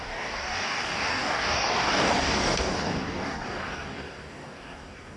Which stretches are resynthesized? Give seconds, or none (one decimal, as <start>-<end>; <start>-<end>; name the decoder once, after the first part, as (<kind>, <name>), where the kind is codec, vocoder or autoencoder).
0.0-5.2 (codec, DAC)